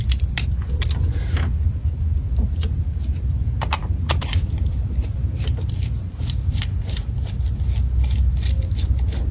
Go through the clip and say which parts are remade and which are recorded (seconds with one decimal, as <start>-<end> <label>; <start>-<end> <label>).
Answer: 0.0-9.3 recorded